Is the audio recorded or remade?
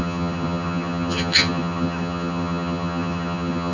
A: remade